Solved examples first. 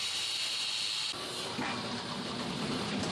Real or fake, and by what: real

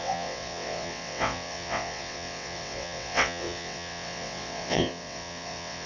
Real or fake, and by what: fake, vocoder, WaveNeXt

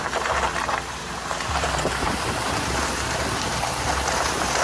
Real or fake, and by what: fake, vocoder, BigVGAN v2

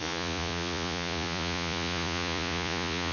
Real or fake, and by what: fake, vocoder, Vocos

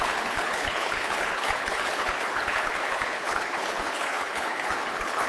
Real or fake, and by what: fake, codec, HILCodec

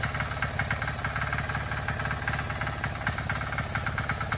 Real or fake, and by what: real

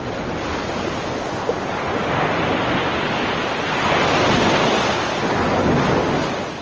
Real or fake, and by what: real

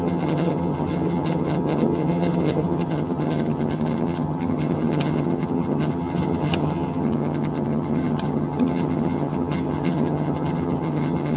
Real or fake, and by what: fake, vocoder, HiFi-GAN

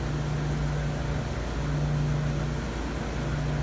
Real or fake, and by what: real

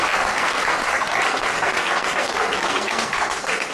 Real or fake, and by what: fake, codec, SNAC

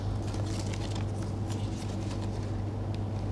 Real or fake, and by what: real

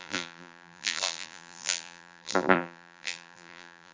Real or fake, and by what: fake, vocoder, BigVGAN v2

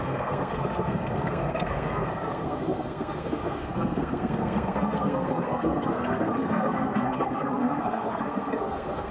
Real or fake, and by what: fake, codec, SNAC